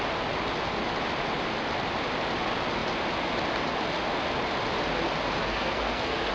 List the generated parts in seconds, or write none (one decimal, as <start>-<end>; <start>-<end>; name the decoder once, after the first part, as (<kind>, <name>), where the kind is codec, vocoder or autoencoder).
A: 5.4-6.3 (codec, SNAC)